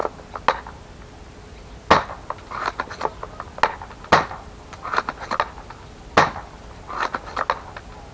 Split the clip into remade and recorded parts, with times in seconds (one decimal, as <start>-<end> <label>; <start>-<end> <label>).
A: 0.0-8.1 recorded